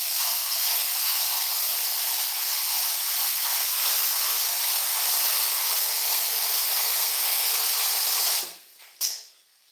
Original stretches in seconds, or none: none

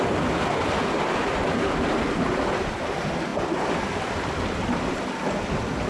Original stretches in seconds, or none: 0.0-5.9

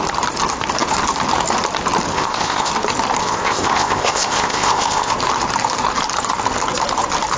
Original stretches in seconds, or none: 0.0-2.1; 2.7-3.2; 5.1-7.4

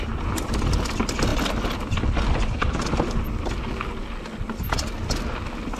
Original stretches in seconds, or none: 0.0-5.8

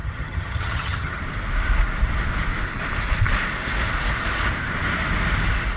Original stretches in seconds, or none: 1.2-5.8

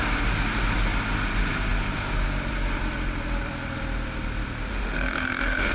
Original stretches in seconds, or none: 0.0-4.7

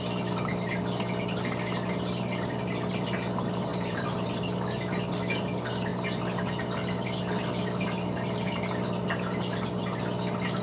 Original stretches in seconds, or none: 0.0-3.7; 4.4-10.6

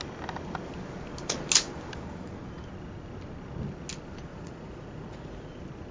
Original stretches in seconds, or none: 0.0-4.3; 5.5-5.9